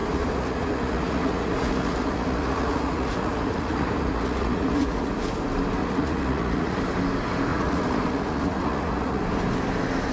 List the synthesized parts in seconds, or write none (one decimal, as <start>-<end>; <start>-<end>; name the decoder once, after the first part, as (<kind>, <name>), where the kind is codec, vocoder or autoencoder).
0.0-5.1 (vocoder, Vocos); 5.8-6.8; 7.5-9.2